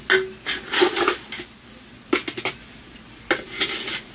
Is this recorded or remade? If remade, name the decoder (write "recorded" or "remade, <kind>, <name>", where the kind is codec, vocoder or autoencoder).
recorded